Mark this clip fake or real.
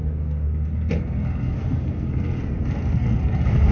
fake